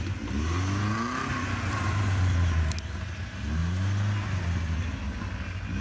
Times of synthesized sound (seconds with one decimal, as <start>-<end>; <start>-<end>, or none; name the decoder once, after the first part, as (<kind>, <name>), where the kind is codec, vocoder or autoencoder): none